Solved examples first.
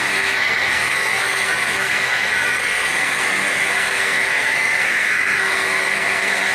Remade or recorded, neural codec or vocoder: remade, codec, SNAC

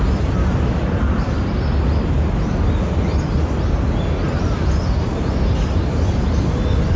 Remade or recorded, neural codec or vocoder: recorded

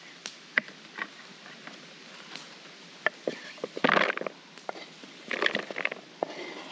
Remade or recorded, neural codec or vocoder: recorded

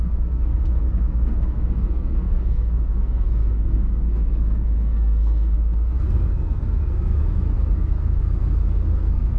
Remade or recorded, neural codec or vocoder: remade, codec, SNAC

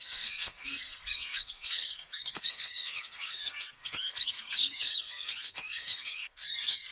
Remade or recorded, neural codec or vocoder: remade, codec, SNAC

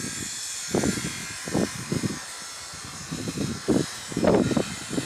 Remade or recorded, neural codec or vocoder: recorded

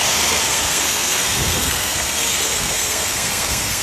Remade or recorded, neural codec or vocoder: remade, codec, SNAC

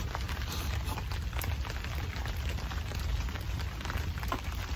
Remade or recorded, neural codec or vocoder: recorded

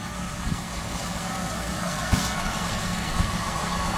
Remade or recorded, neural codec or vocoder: remade, codec, SNAC